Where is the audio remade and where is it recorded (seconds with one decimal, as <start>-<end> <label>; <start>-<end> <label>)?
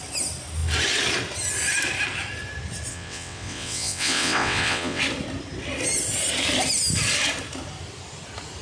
0.0-2.9 recorded; 2.9-5.0 remade; 5.0-8.6 recorded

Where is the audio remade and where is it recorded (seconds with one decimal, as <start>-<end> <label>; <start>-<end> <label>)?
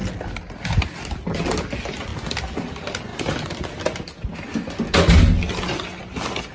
0.0-6.5 recorded